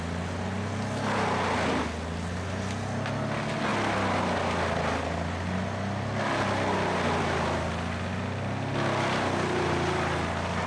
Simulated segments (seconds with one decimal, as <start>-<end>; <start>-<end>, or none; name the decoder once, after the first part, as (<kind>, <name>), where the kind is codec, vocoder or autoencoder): none